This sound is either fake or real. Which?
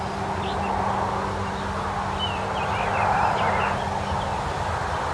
real